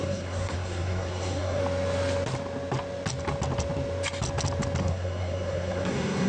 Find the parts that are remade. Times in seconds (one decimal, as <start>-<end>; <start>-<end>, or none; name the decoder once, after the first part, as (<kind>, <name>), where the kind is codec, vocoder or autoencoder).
0.0-1.6 (codec, SNAC); 4.8-6.3